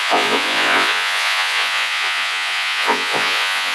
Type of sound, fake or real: fake